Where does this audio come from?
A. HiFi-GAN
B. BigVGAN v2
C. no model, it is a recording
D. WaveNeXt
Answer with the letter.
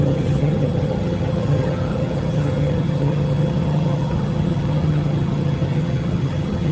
A